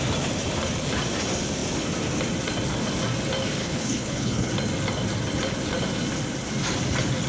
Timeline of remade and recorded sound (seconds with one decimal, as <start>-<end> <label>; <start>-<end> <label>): 0.0-3.6 recorded; 3.6-4.5 remade; 4.5-7.3 recorded